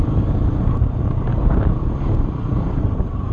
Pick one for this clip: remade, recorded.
remade